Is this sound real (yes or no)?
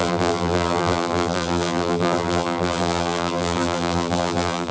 no